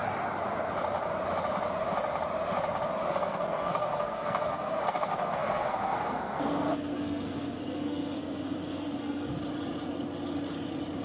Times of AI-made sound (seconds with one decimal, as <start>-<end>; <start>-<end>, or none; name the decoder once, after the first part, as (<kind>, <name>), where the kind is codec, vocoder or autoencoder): 3.1-9.4 (codec, SNAC)